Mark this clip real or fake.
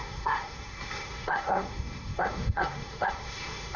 fake